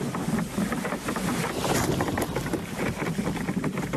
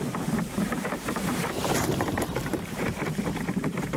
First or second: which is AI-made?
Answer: second